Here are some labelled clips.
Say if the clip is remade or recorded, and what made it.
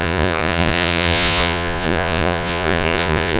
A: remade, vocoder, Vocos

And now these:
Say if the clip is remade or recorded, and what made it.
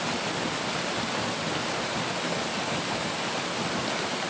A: recorded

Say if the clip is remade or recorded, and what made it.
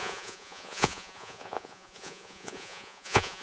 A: remade, vocoder, Vocos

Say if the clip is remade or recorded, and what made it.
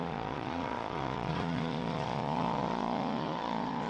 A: remade, vocoder, Vocos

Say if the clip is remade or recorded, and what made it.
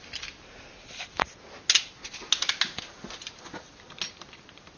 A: recorded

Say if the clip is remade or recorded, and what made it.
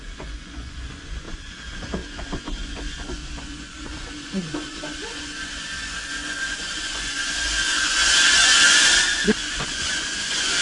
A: remade, vocoder, Vocos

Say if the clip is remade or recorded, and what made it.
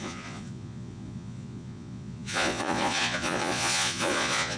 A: remade, vocoder, Vocos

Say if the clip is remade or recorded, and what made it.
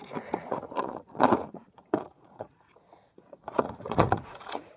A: remade, vocoder, Vocos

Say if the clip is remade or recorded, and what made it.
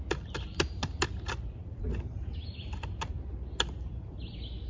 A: recorded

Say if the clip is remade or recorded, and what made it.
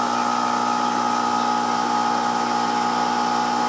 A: recorded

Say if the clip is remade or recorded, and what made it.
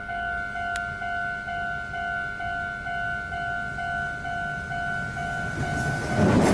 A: recorded